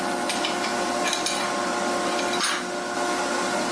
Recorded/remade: recorded